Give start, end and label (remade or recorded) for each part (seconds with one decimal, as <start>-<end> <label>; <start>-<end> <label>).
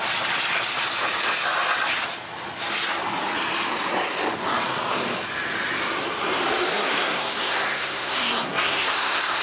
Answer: 0.0-6.7 recorded; 6.7-9.4 remade